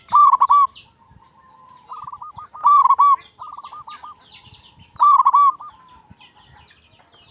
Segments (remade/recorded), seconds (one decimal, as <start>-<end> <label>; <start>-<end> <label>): 0.0-7.3 recorded